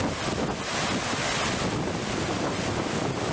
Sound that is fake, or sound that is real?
real